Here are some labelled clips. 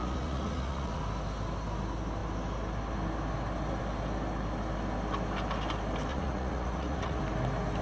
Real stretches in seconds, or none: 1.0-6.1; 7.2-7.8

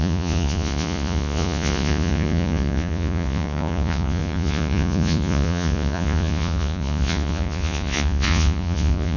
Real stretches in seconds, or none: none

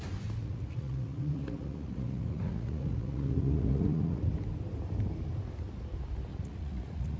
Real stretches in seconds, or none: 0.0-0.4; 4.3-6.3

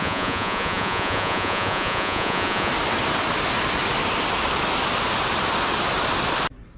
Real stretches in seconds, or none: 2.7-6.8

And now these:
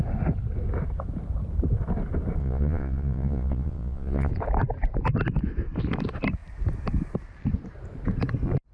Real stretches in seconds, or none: 0.0-2.4; 4.3-8.7

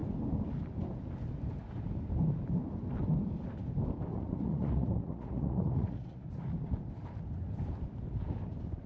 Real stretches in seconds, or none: 0.0-4.1; 6.2-8.9

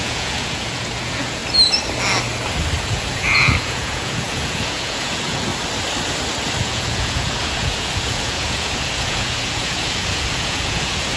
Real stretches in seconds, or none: 1.4-2.8; 5.5-6.6

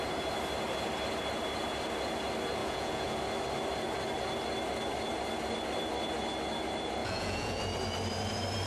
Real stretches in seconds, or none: 0.0-2.6; 3.2-7.0; 7.6-8.7